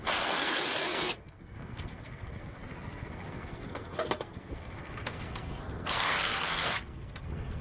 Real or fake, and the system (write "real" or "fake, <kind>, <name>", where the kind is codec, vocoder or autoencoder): fake, codec, SNAC